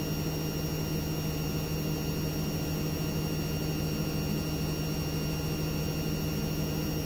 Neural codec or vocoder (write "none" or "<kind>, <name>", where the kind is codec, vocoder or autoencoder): none